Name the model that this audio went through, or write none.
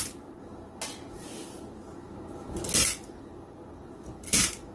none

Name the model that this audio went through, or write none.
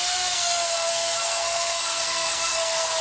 codec, SNAC